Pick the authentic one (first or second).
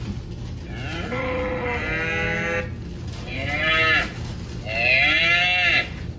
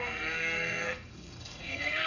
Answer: first